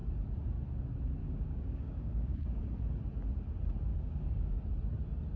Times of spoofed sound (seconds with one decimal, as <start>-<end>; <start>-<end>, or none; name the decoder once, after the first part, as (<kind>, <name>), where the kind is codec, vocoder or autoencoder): 1.2-2.6 (codec, DAC); 3.9-4.5